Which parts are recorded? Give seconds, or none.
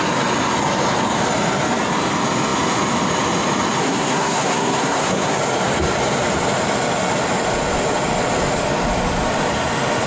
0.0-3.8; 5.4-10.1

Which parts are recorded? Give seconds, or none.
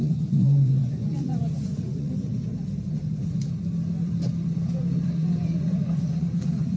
2.3-5.1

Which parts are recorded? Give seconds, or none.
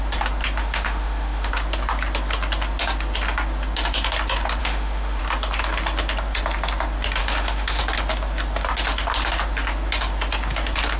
0.0-0.6; 1.5-4.6; 5.2-7.2; 7.8-11.0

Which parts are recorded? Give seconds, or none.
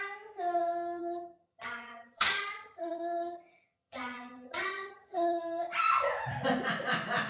0.0-1.0; 5.4-7.3